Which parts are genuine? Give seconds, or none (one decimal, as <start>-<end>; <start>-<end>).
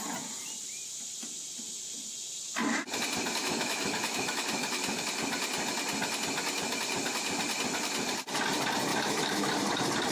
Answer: 0.0-3.4; 5.0-8.9; 9.5-10.1